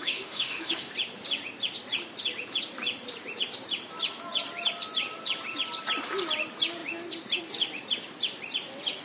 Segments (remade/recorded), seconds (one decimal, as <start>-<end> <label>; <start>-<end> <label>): 0.0-0.9 remade; 0.9-9.0 recorded